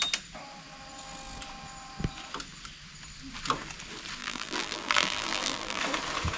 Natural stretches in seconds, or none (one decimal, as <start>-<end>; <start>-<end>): 0.0-4.2; 5.8-6.4